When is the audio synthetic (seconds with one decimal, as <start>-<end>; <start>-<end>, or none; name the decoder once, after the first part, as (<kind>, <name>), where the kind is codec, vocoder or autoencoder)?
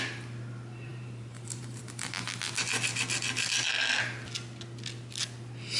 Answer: 0.9-1.8 (vocoder, BigVGAN v2)